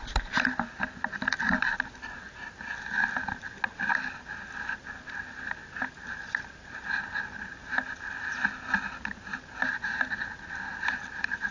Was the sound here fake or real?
real